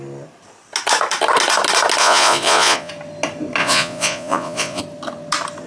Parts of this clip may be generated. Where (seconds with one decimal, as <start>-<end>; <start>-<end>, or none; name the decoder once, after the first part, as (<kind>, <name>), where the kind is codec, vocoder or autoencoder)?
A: 2.0-2.9 (vocoder, Vocos); 3.6-4.8